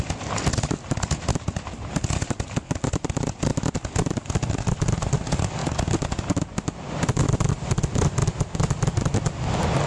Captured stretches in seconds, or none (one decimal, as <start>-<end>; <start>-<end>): 0.0-9.9